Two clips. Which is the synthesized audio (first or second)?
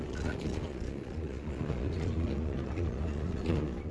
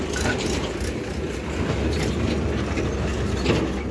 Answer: first